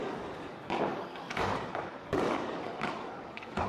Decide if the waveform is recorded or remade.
remade